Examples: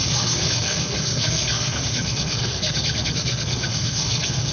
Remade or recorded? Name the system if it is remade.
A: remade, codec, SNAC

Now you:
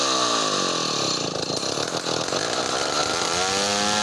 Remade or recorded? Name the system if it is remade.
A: recorded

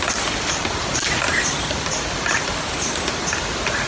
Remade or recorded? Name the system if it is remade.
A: recorded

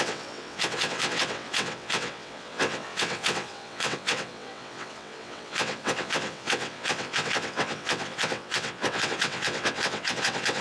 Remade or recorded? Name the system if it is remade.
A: remade, vocoder, WaveNeXt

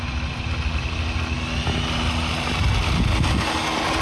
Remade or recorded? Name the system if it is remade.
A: recorded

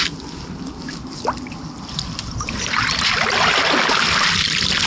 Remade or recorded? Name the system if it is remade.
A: recorded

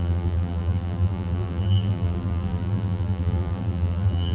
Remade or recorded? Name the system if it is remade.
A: remade, vocoder, BigVGAN v2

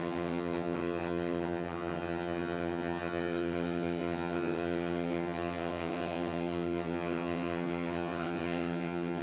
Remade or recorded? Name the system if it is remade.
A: remade, vocoder, HiFi-GAN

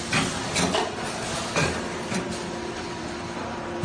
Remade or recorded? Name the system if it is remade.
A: recorded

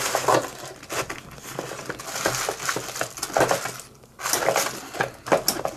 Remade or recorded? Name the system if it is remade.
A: recorded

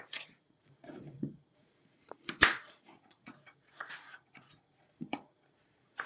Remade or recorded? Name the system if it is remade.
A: remade, vocoder, Vocos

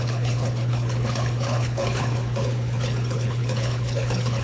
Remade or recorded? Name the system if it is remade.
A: remade, codec, HILCodec